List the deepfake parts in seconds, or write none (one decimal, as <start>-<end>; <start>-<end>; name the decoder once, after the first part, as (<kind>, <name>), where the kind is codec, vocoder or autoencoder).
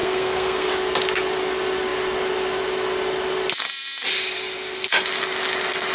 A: 0.0-0.7 (codec, SNAC)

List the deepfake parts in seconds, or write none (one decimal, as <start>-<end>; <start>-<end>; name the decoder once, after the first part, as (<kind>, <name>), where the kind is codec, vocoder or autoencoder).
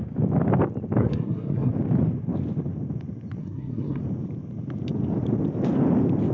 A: 1.0-1.7 (codec, SNAC); 3.4-4.0